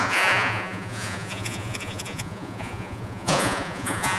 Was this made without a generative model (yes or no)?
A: no